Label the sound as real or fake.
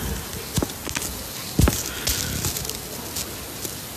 real